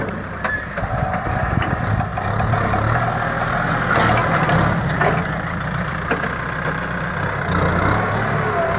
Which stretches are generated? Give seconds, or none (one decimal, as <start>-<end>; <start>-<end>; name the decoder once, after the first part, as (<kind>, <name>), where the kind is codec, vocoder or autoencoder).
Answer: none